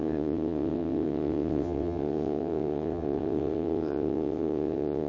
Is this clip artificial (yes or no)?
yes